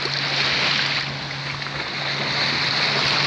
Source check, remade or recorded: recorded